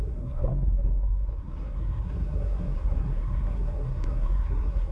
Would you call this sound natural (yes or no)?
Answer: no